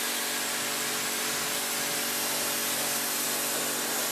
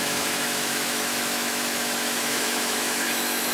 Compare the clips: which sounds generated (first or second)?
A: second